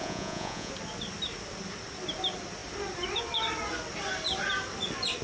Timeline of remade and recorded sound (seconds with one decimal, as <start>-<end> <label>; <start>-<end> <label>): 0.0-0.7 remade; 0.7-5.2 recorded

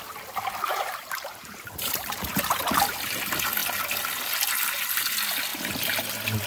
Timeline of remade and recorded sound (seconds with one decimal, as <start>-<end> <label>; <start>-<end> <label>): 0.0-0.7 recorded; 0.7-2.6 remade; 2.6-5.5 recorded; 5.5-6.1 remade; 6.1-6.5 recorded